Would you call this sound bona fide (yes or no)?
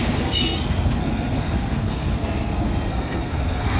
no